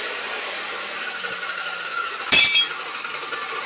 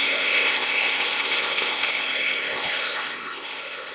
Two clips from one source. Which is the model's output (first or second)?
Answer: second